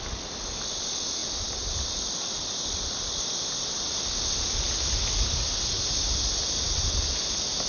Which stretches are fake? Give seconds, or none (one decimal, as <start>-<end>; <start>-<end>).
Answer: none